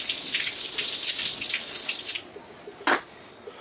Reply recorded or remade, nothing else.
recorded